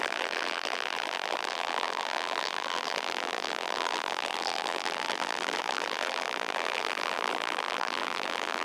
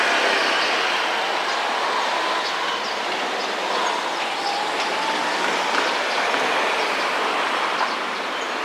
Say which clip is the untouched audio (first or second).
second